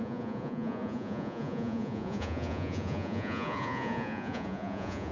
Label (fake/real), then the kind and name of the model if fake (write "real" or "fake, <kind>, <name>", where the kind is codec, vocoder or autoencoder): fake, vocoder, Vocos